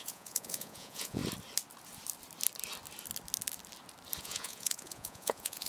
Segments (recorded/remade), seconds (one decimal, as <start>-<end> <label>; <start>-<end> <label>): 0.0-1.2 remade; 1.2-4.2 recorded; 4.2-5.7 remade